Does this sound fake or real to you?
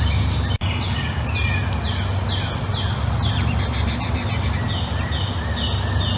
real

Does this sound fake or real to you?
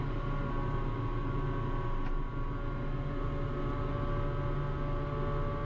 real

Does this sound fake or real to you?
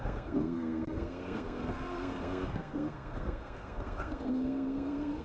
fake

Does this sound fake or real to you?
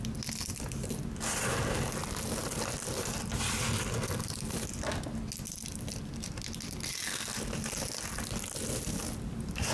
real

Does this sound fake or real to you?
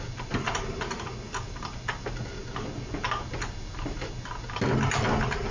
real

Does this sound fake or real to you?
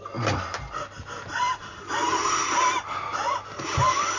real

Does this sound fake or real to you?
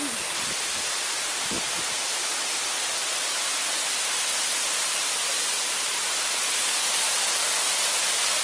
real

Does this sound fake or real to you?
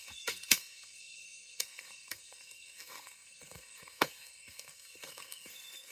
fake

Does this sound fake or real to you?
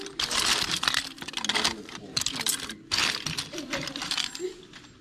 real